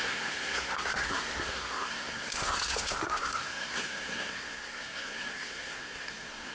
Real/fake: fake